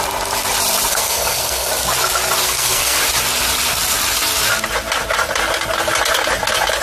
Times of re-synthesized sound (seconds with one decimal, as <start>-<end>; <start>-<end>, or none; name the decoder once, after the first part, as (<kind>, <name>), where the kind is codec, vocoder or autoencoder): 0.9-1.7 (codec, SNAC); 2.4-3.0

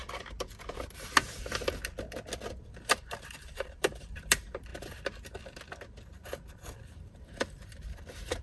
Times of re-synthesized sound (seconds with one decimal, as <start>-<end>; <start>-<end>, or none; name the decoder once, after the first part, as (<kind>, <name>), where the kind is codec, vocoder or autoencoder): 2.6-4.7 (vocoder, BigVGAN v2); 6.2-8.4